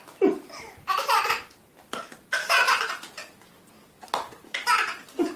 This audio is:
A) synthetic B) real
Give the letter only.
B